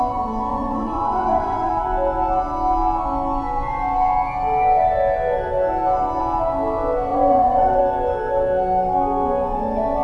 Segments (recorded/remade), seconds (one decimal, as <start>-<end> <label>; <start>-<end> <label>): 0.0-0.5 recorded; 0.5-1.7 remade; 1.7-7.1 recorded; 7.1-7.8 remade; 7.8-10.0 recorded